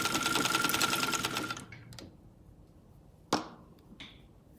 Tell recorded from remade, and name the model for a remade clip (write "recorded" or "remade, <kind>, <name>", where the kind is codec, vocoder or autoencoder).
recorded